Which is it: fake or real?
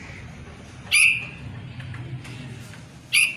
real